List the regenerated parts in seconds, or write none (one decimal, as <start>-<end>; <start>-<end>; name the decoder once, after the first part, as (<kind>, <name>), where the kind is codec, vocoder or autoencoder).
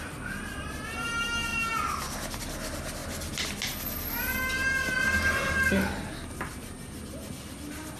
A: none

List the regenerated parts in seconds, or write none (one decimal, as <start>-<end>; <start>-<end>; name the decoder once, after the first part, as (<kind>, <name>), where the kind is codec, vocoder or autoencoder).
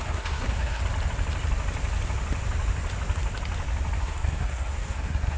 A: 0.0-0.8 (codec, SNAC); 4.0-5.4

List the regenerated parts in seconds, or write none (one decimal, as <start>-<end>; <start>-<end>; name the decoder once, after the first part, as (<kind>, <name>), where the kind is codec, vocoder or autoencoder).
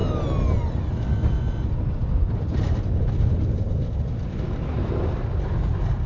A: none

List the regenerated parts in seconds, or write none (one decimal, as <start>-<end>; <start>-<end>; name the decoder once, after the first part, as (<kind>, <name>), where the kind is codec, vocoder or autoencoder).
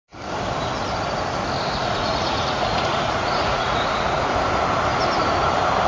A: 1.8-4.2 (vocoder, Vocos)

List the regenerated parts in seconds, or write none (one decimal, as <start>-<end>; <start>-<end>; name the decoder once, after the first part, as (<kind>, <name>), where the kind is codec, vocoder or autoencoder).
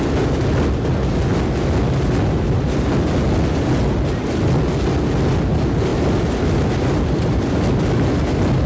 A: none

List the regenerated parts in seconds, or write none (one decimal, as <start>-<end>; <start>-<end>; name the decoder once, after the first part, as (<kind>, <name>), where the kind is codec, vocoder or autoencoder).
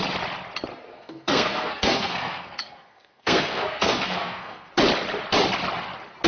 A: 0.9-4.7 (codec, SNAC)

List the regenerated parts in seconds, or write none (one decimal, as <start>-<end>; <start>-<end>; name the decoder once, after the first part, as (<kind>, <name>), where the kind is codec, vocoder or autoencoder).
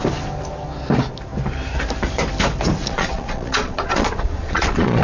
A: 2.8-5.0 (vocoder, Vocos)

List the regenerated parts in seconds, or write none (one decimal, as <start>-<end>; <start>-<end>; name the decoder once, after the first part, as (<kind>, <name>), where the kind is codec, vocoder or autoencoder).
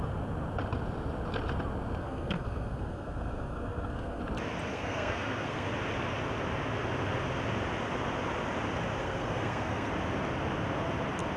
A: 2.0-4.2 (codec, SNAC); 4.7-5.7; 9.0-9.9